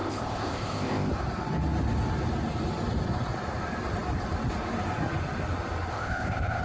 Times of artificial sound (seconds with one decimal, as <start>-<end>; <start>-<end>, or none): 0.0-1.1; 5.9-6.6